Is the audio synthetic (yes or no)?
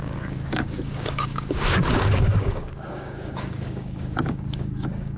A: yes